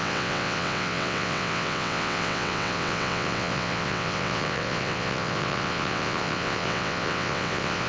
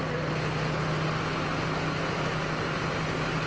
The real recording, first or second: second